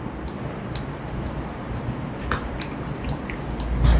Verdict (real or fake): real